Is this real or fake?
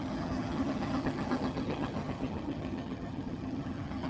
fake